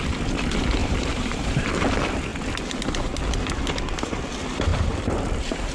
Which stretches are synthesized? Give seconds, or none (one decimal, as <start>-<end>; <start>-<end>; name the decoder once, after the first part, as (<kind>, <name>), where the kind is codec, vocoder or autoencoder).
0.8-1.7 (vocoder, BigVGAN v2); 4.7-5.7